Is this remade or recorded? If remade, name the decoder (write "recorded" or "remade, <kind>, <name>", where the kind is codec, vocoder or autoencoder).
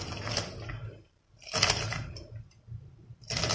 recorded